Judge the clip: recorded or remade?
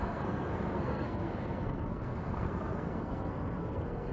remade